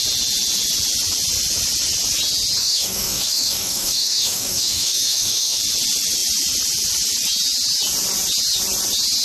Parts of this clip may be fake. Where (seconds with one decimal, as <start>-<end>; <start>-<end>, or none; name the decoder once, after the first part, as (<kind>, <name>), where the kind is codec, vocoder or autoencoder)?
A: 2.6-5.6 (codec, DAC)